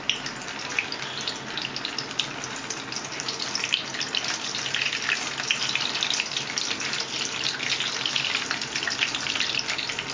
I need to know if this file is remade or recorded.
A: recorded